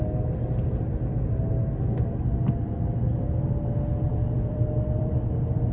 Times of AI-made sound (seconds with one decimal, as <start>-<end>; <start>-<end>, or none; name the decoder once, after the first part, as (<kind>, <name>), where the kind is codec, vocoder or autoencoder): 4.1-5.1 (vocoder, BigVGAN v2)